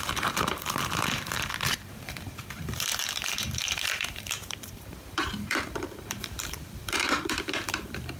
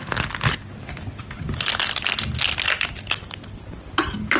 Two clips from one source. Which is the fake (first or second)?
first